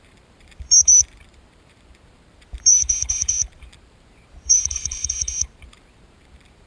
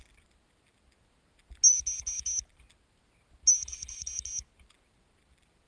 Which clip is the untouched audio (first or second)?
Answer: second